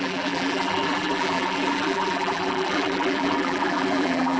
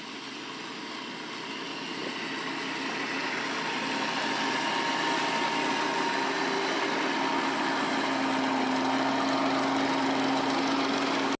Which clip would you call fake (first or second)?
first